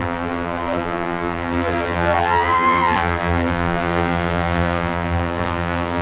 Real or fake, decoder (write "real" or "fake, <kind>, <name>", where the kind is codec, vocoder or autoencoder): fake, vocoder, BigVGAN v2